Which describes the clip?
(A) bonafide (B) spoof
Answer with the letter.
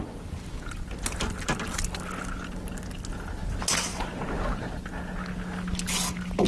A